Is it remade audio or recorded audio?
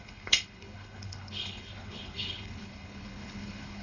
remade